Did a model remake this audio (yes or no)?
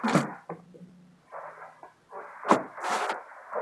no